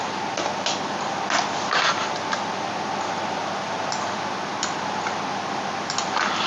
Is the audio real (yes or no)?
yes